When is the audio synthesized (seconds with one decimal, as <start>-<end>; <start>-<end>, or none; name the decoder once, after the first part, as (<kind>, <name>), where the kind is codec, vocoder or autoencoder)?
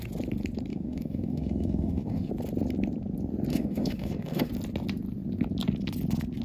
0.7-2.3 (autoencoder, DAC-VAE); 3.5-4.5